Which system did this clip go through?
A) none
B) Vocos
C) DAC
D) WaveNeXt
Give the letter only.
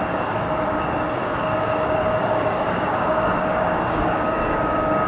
C